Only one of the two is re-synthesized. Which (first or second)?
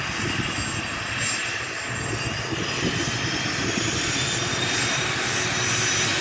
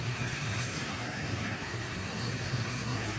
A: second